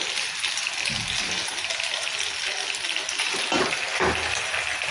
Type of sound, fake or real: real